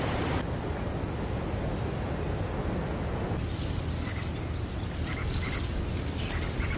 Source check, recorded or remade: recorded